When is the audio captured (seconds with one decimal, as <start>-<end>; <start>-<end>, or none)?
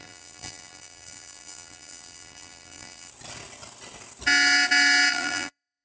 3.1-5.1